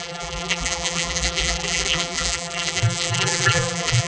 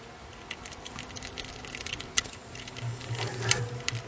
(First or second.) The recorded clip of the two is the second